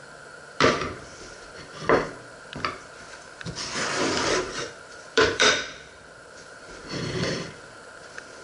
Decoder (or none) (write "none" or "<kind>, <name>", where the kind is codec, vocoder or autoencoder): vocoder, BigVGAN v2